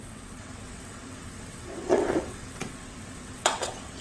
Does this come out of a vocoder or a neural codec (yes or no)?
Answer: yes